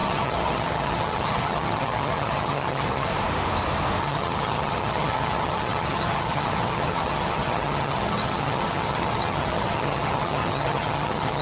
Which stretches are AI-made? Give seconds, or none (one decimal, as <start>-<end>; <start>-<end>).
0.0-3.1; 4.0-11.4

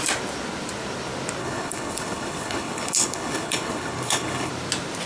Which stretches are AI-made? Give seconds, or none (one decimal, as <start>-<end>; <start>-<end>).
1.4-4.5

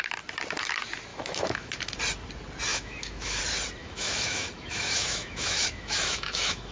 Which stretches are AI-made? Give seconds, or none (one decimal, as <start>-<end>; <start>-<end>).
1.1-1.7; 2.7-3.4; 3.8-6.7

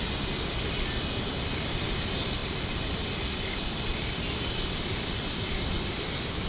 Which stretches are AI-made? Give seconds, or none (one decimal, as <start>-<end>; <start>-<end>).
2.4-6.5